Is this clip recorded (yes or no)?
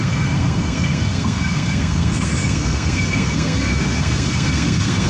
no